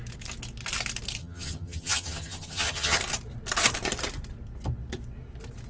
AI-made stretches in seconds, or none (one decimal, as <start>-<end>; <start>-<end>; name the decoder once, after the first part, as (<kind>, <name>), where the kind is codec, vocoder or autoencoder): 1.2-3.0 (vocoder, HiFi-GAN)